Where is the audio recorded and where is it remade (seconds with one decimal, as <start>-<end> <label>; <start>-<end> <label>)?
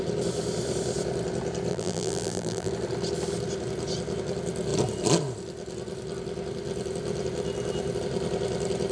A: 0.0-1.7 recorded; 1.7-2.7 remade; 2.7-8.9 recorded